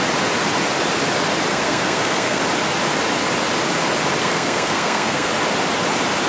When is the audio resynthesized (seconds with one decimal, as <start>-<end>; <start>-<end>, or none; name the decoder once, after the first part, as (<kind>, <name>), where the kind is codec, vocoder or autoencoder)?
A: 1.5-2.4 (codec, SNAC); 4.2-5.3